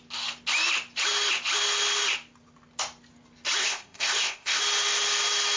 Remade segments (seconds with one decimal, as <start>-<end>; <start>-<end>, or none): 3.6-4.6